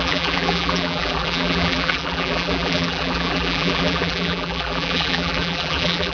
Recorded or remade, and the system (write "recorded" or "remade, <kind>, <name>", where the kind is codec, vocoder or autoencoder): remade, vocoder, BigVGAN v2